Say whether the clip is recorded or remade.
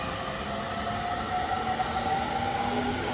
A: recorded